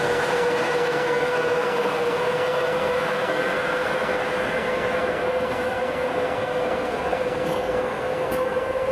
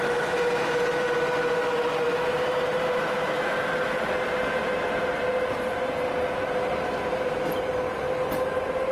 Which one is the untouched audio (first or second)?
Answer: second